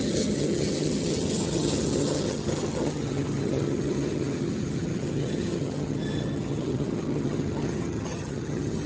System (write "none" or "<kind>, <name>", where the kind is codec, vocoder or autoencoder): vocoder, HiFi-GAN